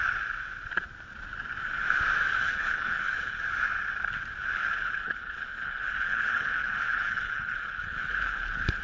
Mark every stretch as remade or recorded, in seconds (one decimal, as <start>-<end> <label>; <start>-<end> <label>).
0.0-2.4 recorded; 2.4-3.4 remade; 3.4-4.6 recorded; 4.6-8.8 remade